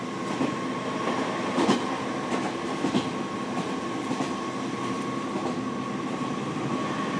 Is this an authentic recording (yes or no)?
yes